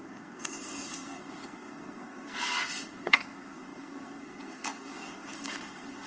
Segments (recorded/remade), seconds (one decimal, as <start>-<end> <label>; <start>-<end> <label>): 0.0-6.1 remade